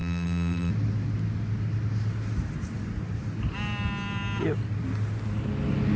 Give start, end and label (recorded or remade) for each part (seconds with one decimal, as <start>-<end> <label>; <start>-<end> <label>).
0.0-0.7 remade; 0.7-6.0 recorded